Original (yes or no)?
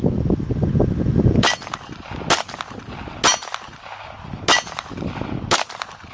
yes